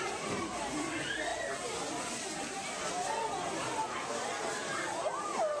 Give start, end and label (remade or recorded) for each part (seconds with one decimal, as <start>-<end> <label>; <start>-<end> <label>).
0.0-5.6 recorded